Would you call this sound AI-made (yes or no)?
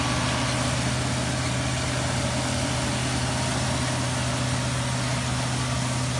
no